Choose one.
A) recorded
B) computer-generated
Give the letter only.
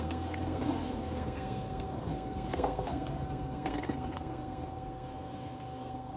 B